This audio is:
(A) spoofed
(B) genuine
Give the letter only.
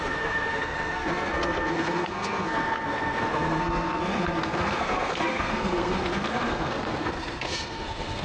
A